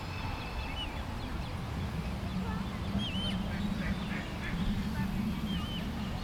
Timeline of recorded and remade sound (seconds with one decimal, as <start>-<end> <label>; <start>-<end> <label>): 0.0-6.2 recorded